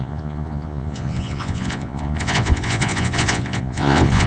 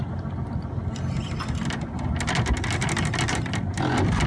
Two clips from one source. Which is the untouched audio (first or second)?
second